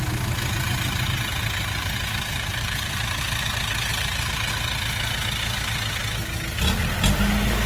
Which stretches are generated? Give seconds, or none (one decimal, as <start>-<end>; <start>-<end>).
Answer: 1.3-3.2; 3.9-4.5